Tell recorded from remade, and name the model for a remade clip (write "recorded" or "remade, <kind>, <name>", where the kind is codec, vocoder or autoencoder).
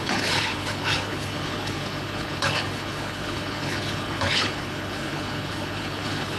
remade, codec, HILCodec